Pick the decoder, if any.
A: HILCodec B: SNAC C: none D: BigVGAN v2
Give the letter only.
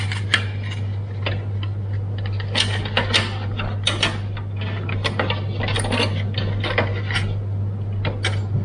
C